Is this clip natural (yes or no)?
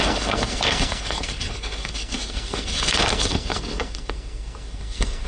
no